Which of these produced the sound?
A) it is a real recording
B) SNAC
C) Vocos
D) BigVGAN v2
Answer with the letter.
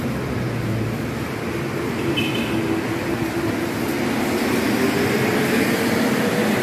A